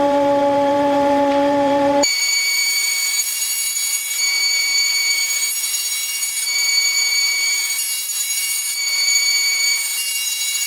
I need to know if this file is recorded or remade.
remade